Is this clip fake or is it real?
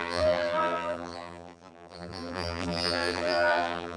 fake